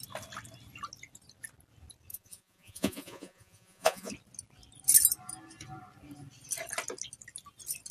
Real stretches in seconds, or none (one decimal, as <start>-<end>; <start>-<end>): 0.0-2.1; 4.1-7.9